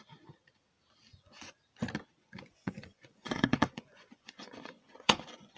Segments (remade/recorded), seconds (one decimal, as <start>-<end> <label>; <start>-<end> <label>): 0.0-1.1 recorded; 1.1-1.6 remade; 1.6-2.2 recorded; 2.2-5.6 remade